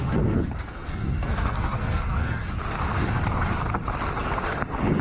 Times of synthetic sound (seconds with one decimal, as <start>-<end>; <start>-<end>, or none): 0.0-2.4